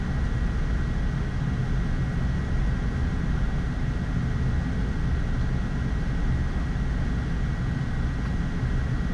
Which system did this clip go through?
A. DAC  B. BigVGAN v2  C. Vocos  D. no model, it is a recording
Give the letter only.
D